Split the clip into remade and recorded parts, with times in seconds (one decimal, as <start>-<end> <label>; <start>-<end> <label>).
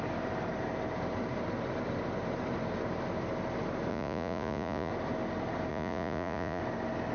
0.0-3.9 recorded; 3.9-4.9 remade; 4.9-5.7 recorded; 5.7-6.6 remade; 6.6-7.1 recorded